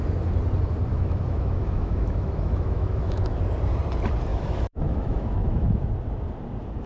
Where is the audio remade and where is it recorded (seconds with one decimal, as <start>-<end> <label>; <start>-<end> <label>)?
0.0-0.9 recorded; 0.9-3.4 remade; 3.4-4.3 recorded; 4.3-5.9 remade; 5.9-6.9 recorded

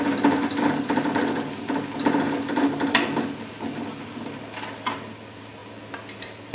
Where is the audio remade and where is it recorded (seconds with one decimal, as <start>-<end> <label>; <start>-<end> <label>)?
0.0-6.5 recorded

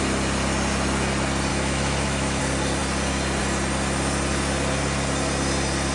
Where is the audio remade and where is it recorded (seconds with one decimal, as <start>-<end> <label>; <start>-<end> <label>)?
0.0-1.5 recorded; 1.5-2.4 remade; 2.4-5.9 recorded

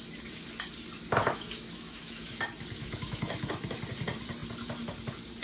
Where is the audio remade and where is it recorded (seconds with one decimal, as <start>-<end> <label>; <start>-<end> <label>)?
0.0-1.2 recorded; 1.2-2.4 remade; 2.4-2.8 recorded; 2.8-3.8 remade; 3.8-5.4 recorded

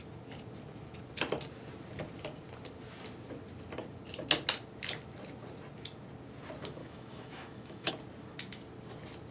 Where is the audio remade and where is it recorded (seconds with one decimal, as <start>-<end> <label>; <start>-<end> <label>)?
0.0-6.8 recorded; 6.8-7.9 remade; 7.9-9.3 recorded

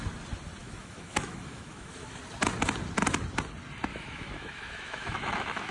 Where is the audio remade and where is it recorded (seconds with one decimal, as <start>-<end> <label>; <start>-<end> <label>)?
0.0-0.6 recorded; 0.6-2.2 remade; 2.2-3.9 recorded; 3.9-5.7 remade

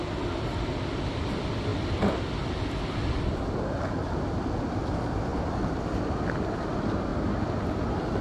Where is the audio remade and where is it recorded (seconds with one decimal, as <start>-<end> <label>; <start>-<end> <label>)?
0.0-8.2 recorded

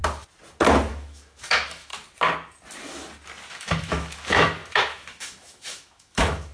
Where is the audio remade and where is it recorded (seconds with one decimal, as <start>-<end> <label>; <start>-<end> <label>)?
0.0-0.9 recorded; 0.9-1.9 remade; 1.9-3.5 recorded; 3.5-6.5 remade